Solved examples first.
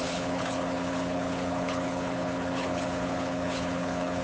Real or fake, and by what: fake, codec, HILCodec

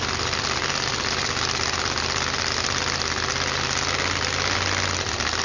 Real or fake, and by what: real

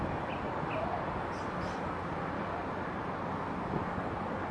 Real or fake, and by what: real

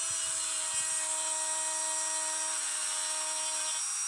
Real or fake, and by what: real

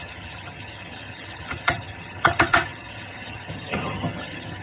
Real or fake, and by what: fake, vocoder, HiFi-GAN